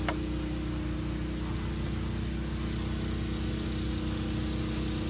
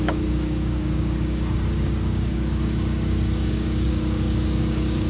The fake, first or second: second